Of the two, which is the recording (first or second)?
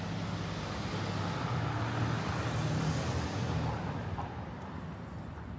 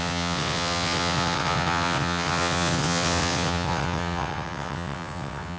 first